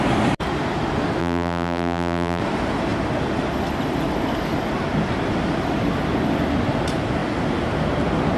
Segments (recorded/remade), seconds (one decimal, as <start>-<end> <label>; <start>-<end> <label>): 0.0-1.2 recorded; 1.2-2.4 remade; 2.4-8.4 recorded